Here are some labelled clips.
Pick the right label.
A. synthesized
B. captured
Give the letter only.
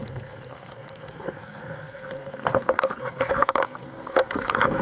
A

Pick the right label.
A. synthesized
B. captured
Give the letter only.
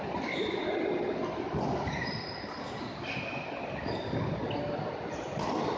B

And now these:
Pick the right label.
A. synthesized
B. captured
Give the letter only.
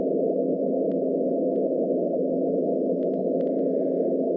B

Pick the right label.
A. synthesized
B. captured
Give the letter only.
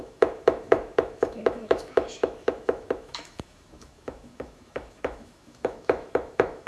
A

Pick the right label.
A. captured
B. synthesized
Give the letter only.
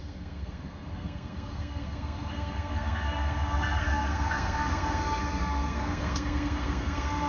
B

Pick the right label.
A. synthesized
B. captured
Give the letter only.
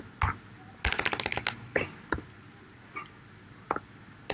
B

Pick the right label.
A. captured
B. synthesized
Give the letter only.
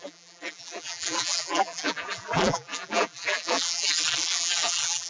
B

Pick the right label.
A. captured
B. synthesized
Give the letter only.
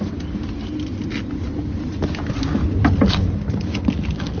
A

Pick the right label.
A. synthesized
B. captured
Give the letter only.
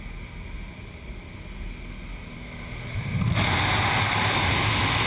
B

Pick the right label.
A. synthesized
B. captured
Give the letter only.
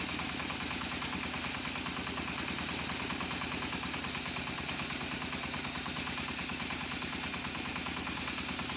B